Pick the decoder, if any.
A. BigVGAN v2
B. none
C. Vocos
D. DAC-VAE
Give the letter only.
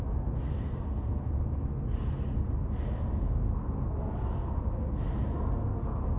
B